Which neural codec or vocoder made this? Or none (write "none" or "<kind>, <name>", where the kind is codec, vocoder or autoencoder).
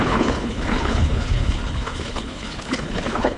codec, HILCodec